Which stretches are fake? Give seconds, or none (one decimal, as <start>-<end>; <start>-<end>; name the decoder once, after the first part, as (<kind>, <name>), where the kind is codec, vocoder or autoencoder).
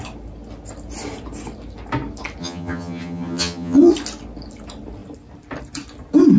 2.4-3.9 (vocoder, HiFi-GAN)